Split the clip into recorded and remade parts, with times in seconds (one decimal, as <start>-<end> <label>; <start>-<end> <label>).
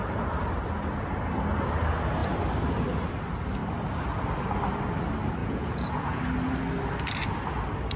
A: 0.0-5.4 recorded; 5.4-6.2 remade; 6.2-8.0 recorded